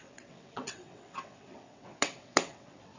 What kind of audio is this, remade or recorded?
remade